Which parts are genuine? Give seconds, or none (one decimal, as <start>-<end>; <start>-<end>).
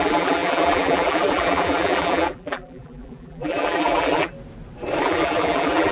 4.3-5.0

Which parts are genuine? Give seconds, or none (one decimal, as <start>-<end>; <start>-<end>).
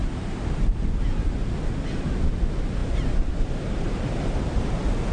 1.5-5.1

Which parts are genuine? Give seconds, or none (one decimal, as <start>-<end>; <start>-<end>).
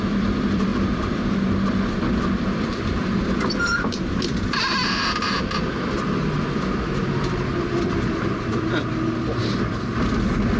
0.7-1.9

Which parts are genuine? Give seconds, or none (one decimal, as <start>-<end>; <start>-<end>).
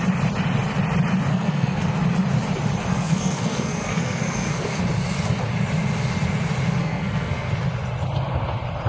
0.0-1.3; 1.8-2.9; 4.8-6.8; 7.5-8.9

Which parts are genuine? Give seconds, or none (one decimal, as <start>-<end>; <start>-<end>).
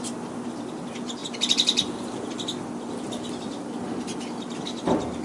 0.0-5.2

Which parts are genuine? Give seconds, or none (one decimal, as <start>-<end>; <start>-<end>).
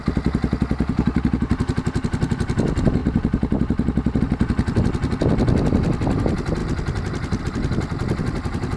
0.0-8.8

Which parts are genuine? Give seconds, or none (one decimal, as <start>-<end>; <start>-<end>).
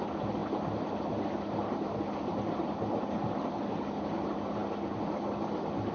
0.0-5.9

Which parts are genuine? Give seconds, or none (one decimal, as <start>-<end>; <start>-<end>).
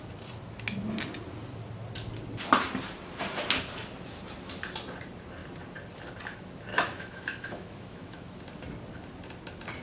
0.0-6.7; 8.4-9.8